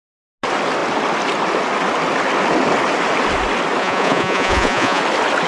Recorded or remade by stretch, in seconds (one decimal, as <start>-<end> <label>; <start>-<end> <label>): 0.0-3.8 recorded; 3.8-5.0 remade; 5.0-5.5 recorded